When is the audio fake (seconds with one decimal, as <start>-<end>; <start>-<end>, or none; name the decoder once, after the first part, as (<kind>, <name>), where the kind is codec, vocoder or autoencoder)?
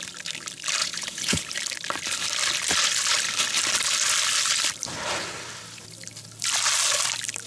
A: 0.8-1.4 (vocoder, Vocos)